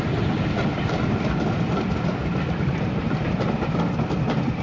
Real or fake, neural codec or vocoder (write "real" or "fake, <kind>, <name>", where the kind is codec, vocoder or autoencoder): real